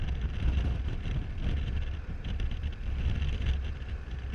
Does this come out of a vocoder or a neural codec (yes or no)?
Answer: no